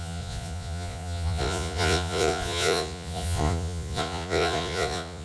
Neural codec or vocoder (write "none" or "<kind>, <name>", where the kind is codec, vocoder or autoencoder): vocoder, Vocos